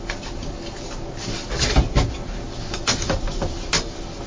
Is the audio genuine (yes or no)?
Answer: yes